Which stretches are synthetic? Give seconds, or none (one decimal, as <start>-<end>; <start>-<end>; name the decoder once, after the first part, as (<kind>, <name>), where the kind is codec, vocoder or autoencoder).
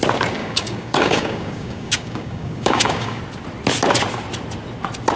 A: 0.4-3.2 (codec, DAC)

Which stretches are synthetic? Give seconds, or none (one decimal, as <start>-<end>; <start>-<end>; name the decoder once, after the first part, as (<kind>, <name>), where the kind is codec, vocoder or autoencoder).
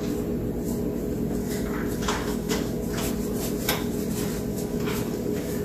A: 1.4-2.8 (codec, DAC); 4.5-5.6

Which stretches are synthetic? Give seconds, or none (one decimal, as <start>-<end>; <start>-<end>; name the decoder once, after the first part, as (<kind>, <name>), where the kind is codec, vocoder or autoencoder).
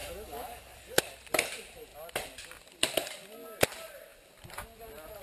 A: 0.0-1.0 (codec, DAC)